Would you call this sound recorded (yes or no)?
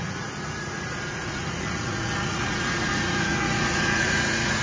no